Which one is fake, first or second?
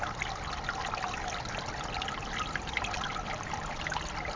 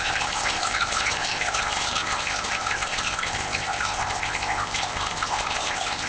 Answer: second